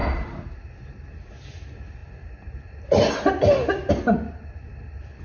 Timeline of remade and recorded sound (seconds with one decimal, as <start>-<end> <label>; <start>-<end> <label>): 0.0-5.2 recorded